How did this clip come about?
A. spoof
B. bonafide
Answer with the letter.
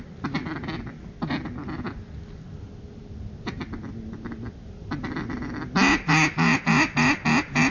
B